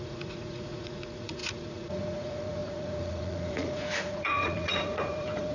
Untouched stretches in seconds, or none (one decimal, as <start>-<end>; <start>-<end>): none